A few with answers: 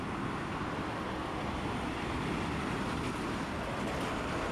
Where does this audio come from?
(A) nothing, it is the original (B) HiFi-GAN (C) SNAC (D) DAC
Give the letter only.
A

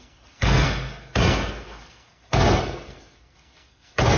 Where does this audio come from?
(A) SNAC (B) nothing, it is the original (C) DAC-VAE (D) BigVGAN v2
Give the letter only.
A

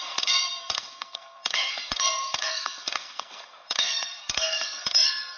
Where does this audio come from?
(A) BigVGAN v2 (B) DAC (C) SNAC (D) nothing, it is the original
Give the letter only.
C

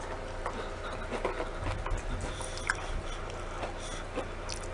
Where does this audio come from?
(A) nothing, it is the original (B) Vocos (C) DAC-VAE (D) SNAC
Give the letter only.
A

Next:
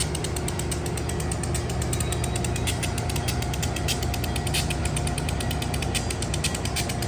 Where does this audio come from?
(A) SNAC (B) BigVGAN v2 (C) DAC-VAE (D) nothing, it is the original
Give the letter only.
D